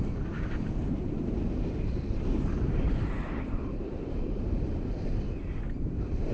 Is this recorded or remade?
remade